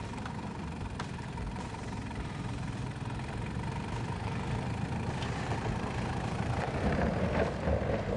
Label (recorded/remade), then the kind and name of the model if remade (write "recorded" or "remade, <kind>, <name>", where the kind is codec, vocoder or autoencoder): remade, vocoder, BigVGAN v2